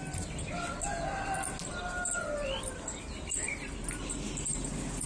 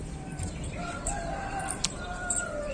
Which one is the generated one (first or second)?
second